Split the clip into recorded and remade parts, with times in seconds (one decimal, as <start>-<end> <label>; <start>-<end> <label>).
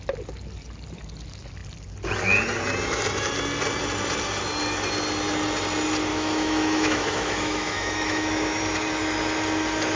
0.0-6.1 recorded; 6.1-8.6 remade; 8.6-10.0 recorded